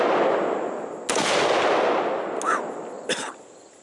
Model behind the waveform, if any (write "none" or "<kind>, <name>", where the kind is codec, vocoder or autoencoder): none